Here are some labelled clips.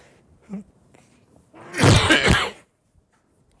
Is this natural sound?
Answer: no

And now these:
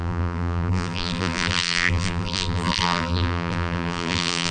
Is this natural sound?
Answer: no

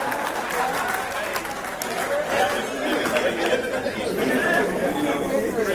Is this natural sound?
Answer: yes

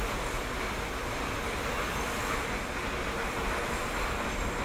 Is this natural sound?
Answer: yes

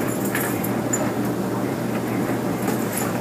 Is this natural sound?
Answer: no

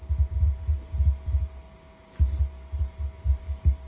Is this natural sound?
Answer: yes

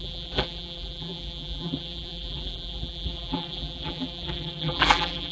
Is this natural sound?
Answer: no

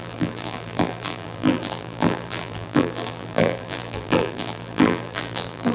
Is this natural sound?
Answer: no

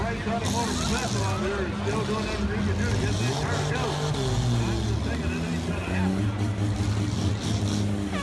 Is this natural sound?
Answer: yes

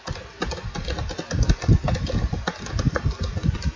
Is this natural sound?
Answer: yes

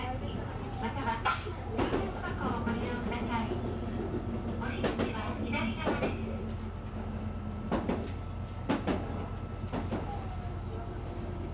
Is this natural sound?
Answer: yes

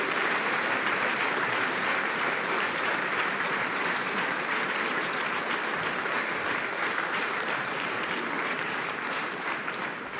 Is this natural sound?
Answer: no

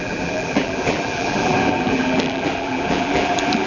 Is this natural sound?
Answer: no